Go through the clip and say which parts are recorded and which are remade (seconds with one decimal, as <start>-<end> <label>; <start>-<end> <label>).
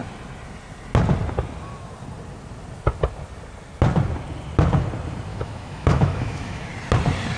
0.0-5.3 recorded; 5.3-6.7 remade; 6.7-7.4 recorded